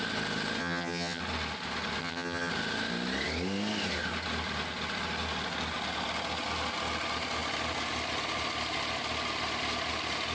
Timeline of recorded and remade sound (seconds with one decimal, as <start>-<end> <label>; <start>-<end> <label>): 0.0-0.6 recorded; 0.6-1.2 remade; 1.2-2.0 recorded; 2.0-2.5 remade; 2.5-10.3 recorded